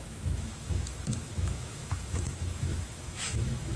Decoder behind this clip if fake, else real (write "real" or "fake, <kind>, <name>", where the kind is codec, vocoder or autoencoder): fake, autoencoder, DAC-VAE